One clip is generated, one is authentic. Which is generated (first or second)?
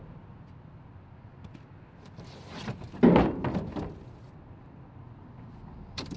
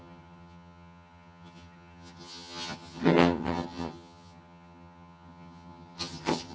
second